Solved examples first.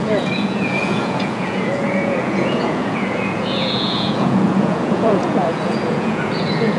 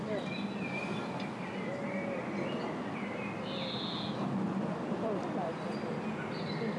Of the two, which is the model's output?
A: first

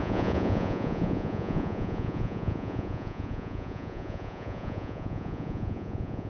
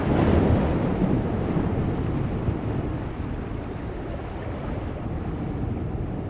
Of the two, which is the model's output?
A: first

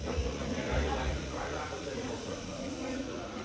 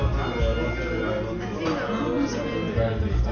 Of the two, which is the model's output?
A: first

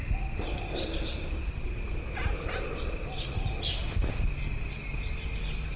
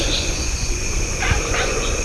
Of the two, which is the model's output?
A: second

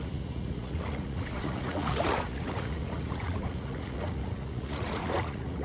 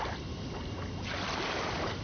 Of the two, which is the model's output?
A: first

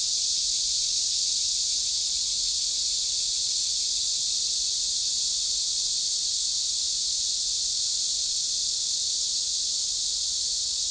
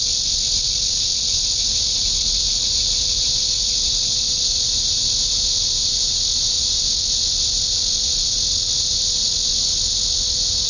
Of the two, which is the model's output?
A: first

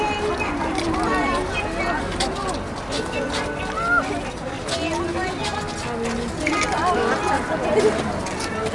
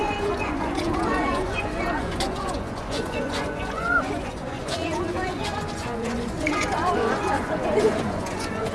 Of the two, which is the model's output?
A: second